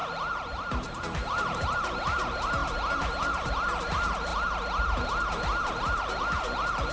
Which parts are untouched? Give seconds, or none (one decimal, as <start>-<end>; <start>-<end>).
2.6-3.2; 4.3-5.8